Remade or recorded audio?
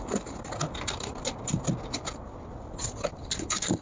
recorded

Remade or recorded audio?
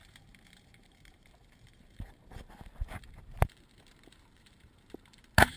remade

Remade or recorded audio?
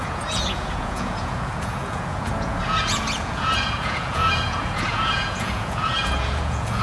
remade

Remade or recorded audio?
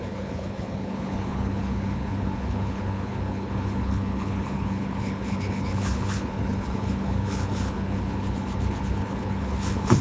remade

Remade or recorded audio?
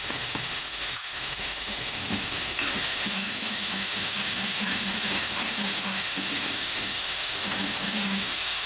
remade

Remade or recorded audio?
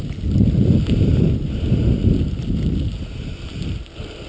recorded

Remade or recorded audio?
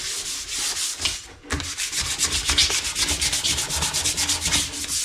recorded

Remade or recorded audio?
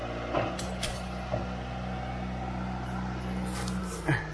recorded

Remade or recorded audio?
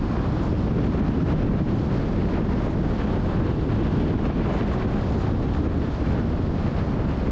recorded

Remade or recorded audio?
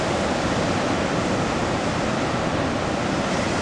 remade